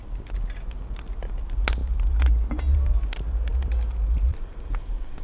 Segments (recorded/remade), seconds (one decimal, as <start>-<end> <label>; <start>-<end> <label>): 0.0-5.2 recorded